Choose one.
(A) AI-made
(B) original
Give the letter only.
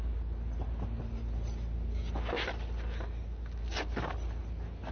B